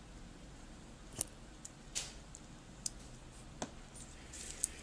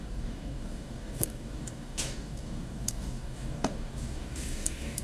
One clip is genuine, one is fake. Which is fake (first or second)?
second